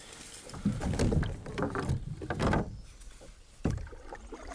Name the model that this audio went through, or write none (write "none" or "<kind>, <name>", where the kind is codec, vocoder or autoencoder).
none